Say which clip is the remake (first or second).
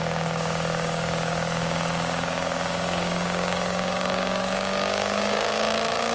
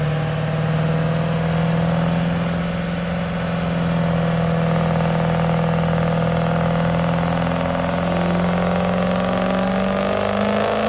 first